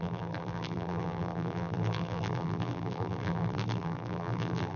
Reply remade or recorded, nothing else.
remade